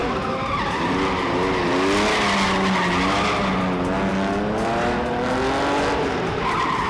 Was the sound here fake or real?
real